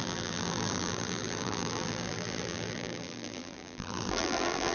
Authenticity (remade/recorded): remade